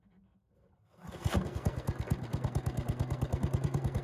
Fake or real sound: fake